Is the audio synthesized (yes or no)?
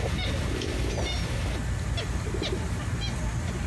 no